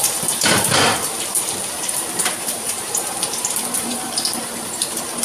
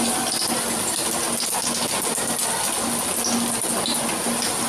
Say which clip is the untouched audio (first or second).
second